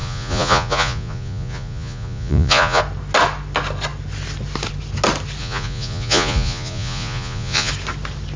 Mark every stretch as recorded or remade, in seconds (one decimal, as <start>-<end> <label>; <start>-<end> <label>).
0.0-2.8 remade; 2.8-5.4 recorded; 5.4-7.7 remade; 7.7-8.4 recorded